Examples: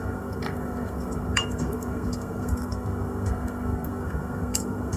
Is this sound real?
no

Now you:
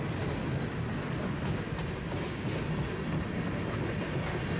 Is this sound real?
yes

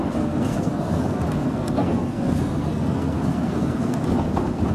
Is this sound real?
no